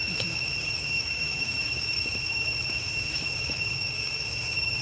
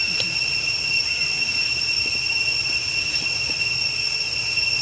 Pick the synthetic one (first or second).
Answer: first